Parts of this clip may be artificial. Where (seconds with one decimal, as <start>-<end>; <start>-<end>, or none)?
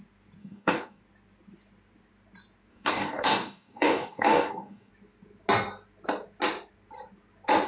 0.4-1.0; 2.7-4.9